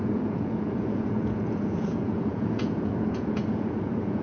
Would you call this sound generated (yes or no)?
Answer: yes